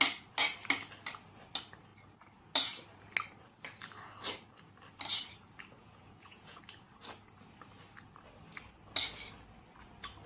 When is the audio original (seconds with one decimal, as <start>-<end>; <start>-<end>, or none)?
0.0-5.8; 6.6-10.3